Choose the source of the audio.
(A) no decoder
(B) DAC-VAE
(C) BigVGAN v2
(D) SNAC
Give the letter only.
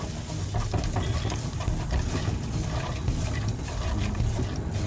A